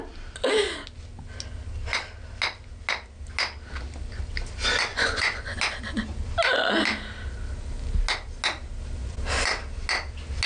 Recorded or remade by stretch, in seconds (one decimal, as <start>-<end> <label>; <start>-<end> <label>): 0.0-4.9 recorded; 4.9-5.6 remade; 5.6-10.5 recorded